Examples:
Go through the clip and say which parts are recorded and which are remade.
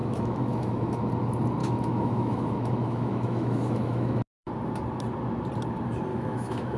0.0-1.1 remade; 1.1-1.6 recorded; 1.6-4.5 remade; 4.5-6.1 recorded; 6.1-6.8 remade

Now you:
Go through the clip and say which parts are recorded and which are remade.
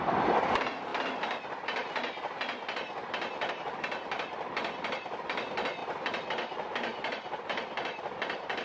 0.0-0.9 remade; 0.9-3.5 recorded; 3.5-5.8 remade; 5.8-6.3 recorded; 6.3-8.6 remade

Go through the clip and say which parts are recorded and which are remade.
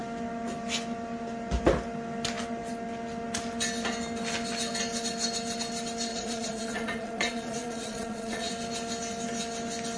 0.0-6.1 recorded; 6.1-8.5 remade; 8.5-10.0 recorded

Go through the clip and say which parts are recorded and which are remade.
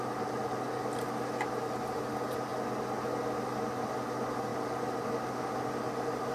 0.0-6.3 recorded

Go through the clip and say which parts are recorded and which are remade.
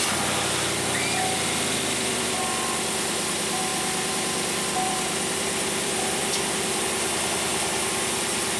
0.0-3.7 recorded; 3.7-6.8 remade; 6.8-7.5 recorded; 7.5-8.6 remade